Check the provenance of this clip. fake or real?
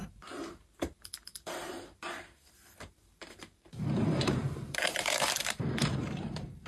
fake